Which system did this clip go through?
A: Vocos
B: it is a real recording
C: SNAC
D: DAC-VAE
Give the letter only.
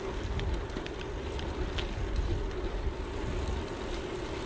B